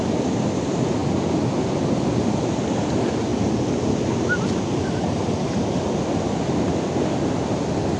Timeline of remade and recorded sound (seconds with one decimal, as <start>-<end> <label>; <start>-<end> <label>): 0.0-8.0 recorded